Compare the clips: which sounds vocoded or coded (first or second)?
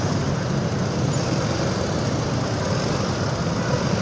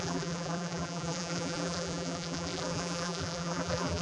second